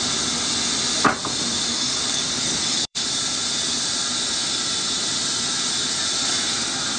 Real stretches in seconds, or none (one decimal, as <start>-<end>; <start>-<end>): 0.0-1.7; 3.1-7.0